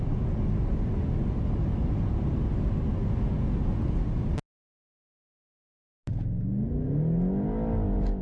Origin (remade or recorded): recorded